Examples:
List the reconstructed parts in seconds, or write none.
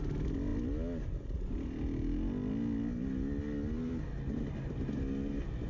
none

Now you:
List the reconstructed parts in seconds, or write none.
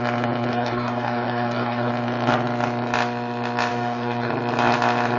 0.5-1.9 (codec, DAC); 3.7-4.3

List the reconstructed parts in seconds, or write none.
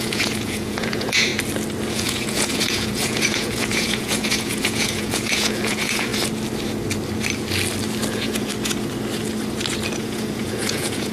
0.0-1.3 (vocoder, Vocos); 1.9-6.1; 8.1-8.5; 10.0-11.1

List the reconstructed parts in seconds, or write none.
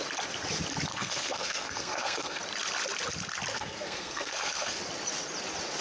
0.9-2.4 (codec, SNAC); 3.5-4.8